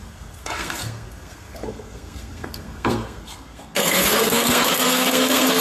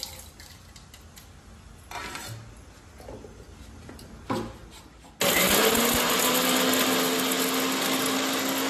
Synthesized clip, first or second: first